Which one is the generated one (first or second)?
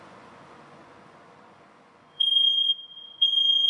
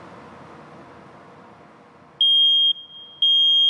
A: first